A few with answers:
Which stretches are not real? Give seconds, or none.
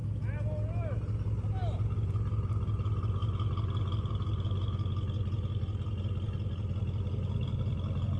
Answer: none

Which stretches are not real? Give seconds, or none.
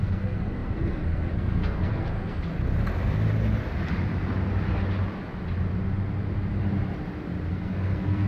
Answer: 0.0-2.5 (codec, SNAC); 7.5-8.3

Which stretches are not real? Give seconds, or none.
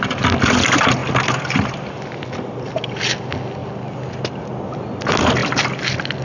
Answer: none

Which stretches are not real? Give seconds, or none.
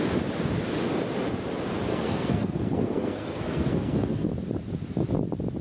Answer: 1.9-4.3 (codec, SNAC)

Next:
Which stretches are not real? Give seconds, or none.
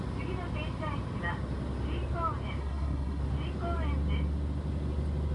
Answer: 2.6-3.2 (codec, SNAC)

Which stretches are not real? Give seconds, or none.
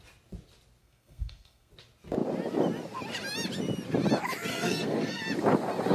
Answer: 0.8-1.7 (codec, SNAC); 4.5-5.2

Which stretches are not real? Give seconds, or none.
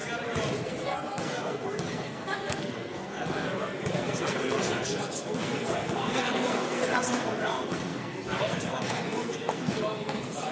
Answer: 0.6-10.5 (codec, SNAC)